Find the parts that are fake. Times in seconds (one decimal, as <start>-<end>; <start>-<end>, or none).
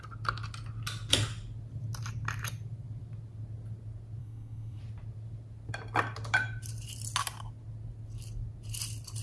4.2-4.8